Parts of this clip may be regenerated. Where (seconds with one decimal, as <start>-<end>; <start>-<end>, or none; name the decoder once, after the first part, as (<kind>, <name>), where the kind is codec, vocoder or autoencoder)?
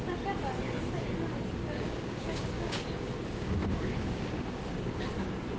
1.6-5.0 (codec, DAC)